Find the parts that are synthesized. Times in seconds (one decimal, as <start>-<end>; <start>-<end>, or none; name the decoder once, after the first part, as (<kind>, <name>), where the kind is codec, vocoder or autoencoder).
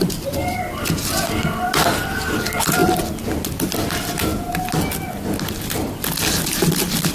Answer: 0.0-2.8 (vocoder, BigVGAN v2); 3.7-4.3